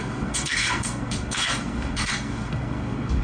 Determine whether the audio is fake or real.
fake